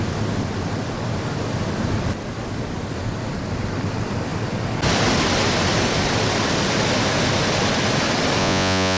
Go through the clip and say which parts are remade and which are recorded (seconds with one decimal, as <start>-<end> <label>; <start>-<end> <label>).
0.0-8.4 recorded; 8.4-9.0 remade